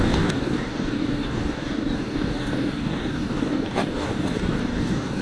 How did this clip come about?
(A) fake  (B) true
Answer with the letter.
A